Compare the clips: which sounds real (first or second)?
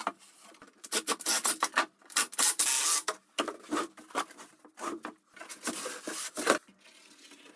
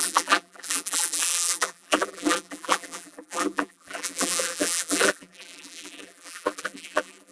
first